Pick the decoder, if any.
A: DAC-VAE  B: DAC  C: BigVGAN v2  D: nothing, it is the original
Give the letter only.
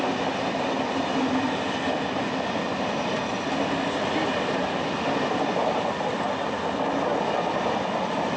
D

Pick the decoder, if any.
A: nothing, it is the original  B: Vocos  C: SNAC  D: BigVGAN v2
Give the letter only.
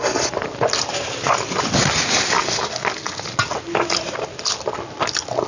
A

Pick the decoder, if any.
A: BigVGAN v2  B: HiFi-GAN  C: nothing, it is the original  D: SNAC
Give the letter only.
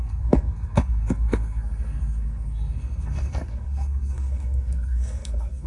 D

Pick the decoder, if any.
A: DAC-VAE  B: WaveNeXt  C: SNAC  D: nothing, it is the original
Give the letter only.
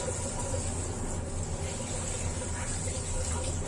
D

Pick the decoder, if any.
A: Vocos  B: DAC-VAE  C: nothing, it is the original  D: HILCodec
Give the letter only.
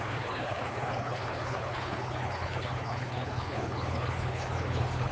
D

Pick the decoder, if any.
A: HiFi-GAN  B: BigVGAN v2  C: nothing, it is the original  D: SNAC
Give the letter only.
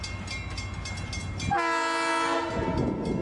C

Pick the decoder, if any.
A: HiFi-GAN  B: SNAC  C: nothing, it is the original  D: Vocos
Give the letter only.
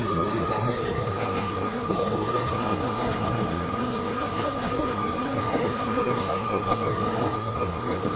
B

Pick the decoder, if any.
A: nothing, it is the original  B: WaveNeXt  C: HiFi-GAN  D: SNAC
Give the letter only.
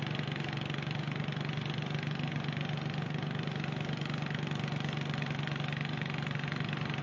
A